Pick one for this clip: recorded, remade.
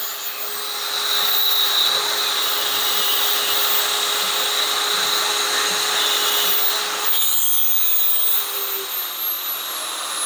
recorded